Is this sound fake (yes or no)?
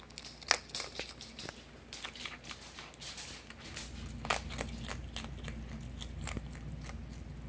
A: no